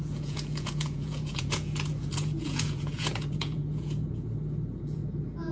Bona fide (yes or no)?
no